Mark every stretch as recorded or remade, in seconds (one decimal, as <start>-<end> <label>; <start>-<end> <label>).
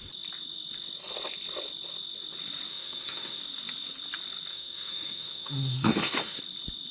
0.0-2.7 recorded; 2.7-3.4 remade; 3.4-4.5 recorded; 4.5-6.4 remade; 6.4-6.9 recorded